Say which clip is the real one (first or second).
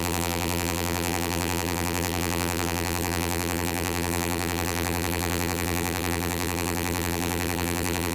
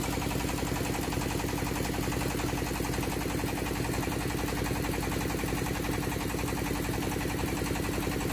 second